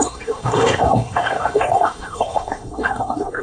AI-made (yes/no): yes